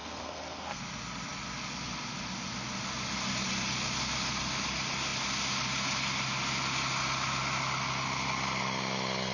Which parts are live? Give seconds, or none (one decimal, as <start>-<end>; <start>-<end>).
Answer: 0.8-9.3